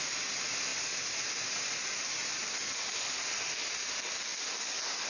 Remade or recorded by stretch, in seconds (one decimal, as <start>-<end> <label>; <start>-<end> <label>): 0.0-5.1 recorded